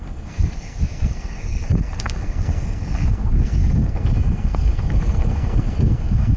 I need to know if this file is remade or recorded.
remade